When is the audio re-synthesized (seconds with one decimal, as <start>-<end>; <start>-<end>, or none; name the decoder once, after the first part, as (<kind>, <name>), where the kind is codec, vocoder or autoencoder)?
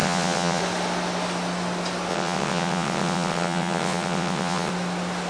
0.0-0.6 (vocoder, WaveNeXt); 2.1-4.7